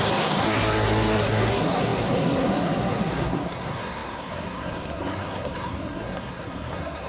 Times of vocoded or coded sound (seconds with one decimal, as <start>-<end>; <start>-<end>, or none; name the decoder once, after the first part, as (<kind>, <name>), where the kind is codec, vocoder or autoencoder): 0.0-7.1 (codec, SNAC)